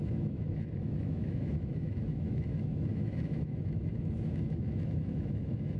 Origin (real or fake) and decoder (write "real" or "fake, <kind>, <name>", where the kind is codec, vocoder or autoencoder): fake, autoencoder, DAC-VAE